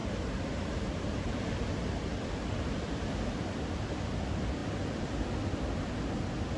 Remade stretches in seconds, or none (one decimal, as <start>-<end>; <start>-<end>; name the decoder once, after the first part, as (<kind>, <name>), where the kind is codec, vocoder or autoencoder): 0.0-4.0 (vocoder, BigVGAN v2)